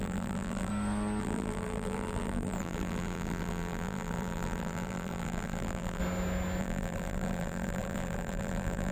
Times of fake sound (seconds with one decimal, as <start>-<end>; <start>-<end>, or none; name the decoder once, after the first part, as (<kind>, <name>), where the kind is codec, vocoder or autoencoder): 0.0-0.7 (vocoder, BigVGAN v2); 1.2-6.0; 6.6-8.9